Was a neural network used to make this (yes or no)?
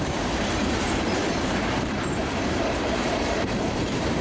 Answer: yes